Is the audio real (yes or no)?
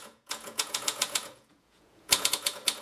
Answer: no